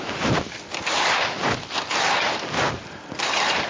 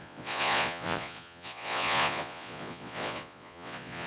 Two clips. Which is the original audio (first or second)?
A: first